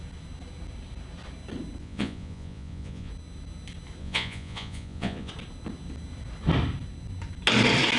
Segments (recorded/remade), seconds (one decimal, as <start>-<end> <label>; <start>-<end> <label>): 0.0-1.8 recorded; 1.8-3.1 remade; 3.1-4.0 recorded; 4.0-5.3 remade; 5.3-8.0 recorded